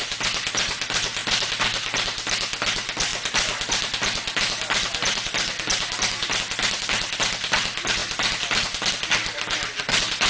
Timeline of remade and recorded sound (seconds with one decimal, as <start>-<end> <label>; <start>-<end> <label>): 0.0-10.3 recorded